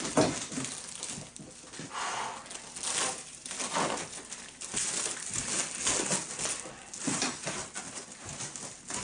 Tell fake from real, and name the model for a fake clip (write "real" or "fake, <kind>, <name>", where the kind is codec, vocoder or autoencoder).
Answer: real